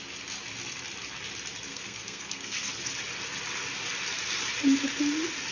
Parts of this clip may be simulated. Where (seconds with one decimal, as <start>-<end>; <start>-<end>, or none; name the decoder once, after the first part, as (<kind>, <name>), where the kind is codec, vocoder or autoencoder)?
1.7-2.7 (codec, SNAC)